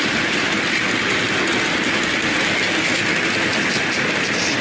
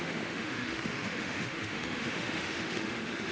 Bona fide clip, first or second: first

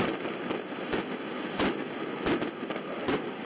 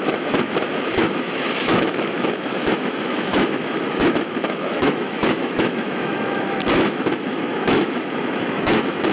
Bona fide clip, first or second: first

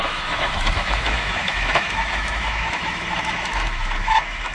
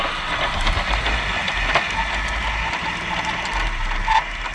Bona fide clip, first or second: second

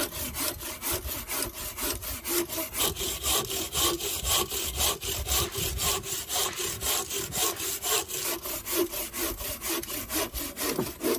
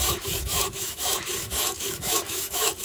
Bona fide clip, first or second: first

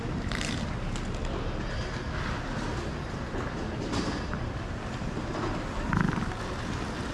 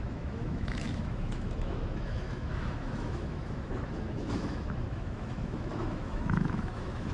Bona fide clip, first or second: first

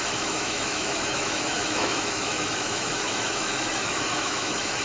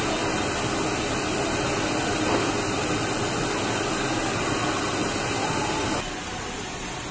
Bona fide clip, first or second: second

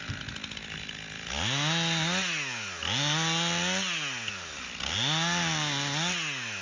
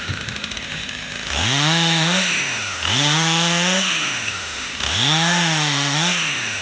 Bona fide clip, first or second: first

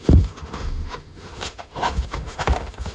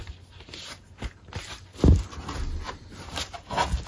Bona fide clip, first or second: second